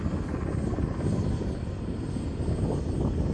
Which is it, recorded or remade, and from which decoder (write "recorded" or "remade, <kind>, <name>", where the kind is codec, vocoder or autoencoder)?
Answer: recorded